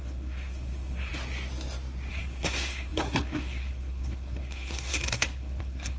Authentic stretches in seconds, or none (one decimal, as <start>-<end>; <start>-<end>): 1.1-2.1